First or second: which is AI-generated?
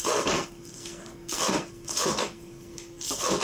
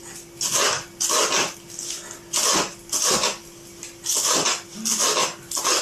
first